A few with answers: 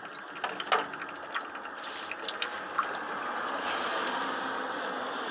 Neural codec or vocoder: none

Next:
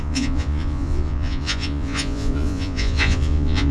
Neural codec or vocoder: vocoder, Vocos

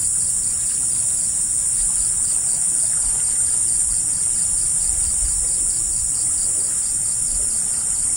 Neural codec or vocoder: none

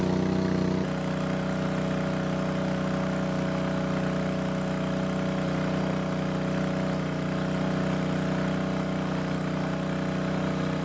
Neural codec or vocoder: none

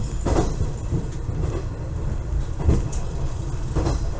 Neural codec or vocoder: none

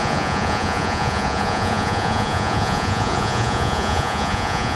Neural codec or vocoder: vocoder, Vocos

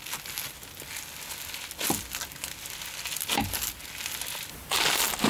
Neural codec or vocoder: none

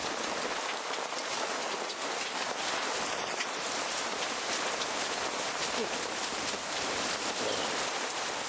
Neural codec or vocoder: none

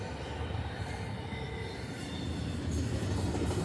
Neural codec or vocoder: none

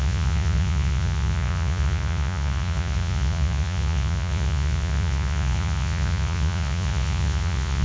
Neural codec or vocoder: vocoder, Vocos